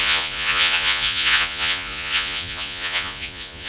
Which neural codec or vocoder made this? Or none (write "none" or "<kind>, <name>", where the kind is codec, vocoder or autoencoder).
vocoder, Vocos